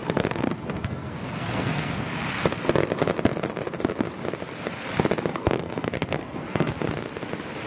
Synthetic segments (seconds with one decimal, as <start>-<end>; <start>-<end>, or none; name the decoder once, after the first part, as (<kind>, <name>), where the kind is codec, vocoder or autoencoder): 0.0-2.2 (codec, SNAC); 5.3-6.7

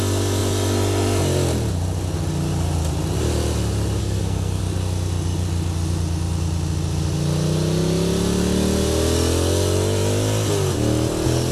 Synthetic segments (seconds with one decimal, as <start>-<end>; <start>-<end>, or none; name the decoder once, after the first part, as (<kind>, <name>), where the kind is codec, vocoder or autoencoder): 4.0-4.6 (codec, SNAC)

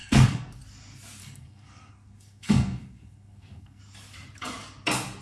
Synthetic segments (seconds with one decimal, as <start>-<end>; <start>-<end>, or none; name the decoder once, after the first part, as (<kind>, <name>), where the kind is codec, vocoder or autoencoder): 0.0-0.6 (codec, SNAC); 1.2-3.8

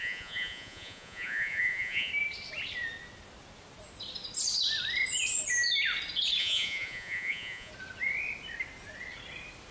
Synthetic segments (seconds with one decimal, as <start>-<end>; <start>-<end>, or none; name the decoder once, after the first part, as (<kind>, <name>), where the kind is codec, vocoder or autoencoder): 0.0-2.1 (vocoder, Vocos); 6.4-7.7

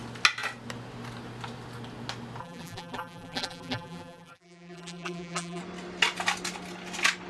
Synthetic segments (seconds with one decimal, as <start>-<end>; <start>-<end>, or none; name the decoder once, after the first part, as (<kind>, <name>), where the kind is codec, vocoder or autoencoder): 2.4-5.6 (vocoder, BigVGAN v2)